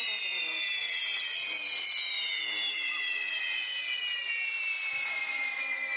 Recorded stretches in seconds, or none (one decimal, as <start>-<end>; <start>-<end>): 0.0-0.8; 3.0-6.0

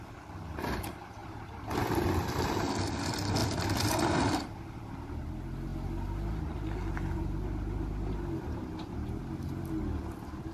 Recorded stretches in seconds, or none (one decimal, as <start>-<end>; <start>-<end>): 0.0-1.2; 1.8-3.4; 5.1-10.5

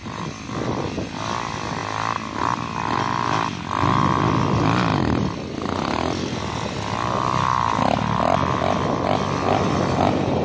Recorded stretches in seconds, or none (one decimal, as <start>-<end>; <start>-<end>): 0.0-10.4

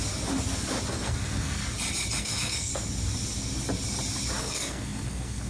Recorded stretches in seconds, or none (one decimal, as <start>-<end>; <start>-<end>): 0.0-0.9; 1.6-2.2; 2.7-4.4

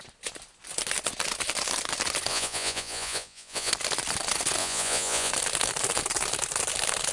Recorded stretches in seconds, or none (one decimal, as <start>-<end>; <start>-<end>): 0.0-2.3; 3.7-4.6; 5.3-7.1

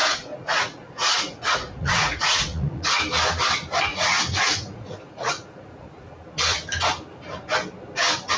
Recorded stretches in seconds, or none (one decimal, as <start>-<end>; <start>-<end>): 2.9-3.9; 6.0-8.4

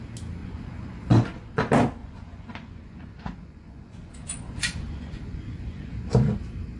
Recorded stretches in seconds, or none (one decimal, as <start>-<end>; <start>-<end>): 0.0-0.4; 1.6-2.0; 6.1-6.8

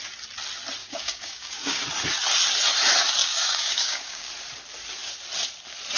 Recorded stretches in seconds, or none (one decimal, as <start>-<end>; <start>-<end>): 0.0-0.8; 1.8-3.2; 4.3-6.0